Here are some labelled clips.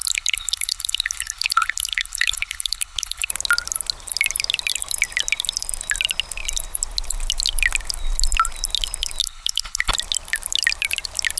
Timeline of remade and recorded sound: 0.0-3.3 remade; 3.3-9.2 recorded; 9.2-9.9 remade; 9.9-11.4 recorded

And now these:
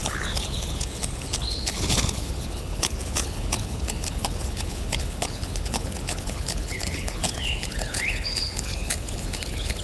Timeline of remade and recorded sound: 0.0-9.8 remade